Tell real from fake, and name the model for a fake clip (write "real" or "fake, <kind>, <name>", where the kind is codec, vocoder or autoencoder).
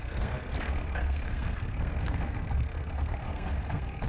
fake, codec, SNAC